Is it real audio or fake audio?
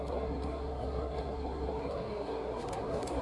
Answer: fake